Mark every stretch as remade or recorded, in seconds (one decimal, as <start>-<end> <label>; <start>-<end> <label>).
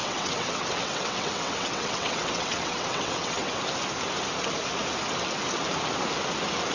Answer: 0.0-3.6 remade; 3.6-6.7 recorded